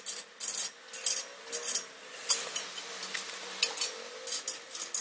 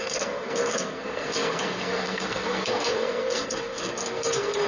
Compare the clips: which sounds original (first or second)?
first